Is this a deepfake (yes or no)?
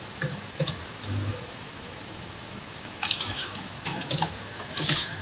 yes